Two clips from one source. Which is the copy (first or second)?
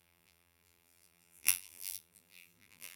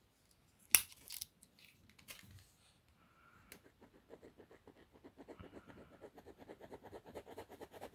first